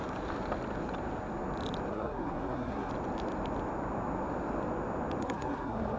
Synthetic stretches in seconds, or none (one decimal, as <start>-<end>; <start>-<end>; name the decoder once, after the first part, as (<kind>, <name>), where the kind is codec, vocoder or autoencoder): 1.9-2.9 (codec, SNAC); 5.2-6.0